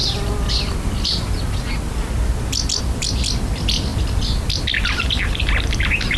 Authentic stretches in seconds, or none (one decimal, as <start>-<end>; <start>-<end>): 0.0-6.2